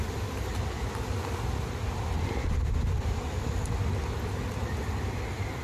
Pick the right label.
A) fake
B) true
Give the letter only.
B